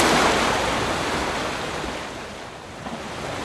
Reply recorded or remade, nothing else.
recorded